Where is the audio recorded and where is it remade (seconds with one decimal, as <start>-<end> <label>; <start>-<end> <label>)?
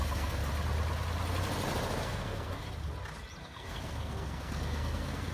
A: 0.0-0.4 remade; 0.4-2.0 recorded; 2.0-2.6 remade; 2.6-3.4 recorded; 3.4-5.3 remade